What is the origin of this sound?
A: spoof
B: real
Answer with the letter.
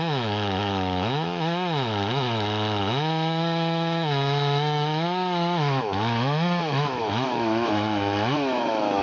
A